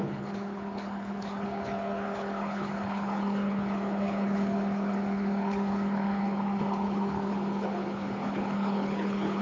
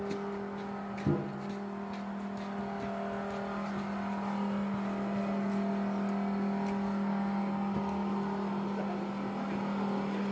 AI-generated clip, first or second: first